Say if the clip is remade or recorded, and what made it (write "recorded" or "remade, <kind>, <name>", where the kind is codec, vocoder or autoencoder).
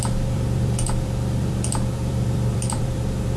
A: remade, vocoder, BigVGAN v2